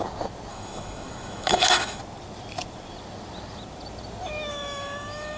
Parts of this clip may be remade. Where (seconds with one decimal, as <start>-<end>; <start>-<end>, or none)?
0.5-2.0; 4.5-5.4